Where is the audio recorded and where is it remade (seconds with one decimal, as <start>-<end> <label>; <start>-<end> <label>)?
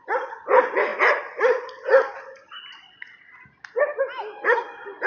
0.0-5.1 recorded